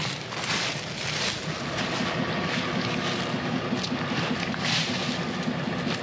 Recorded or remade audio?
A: recorded